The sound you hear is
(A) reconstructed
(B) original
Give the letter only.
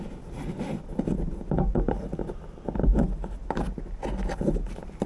B